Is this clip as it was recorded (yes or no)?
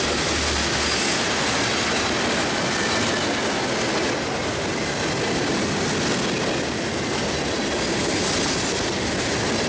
yes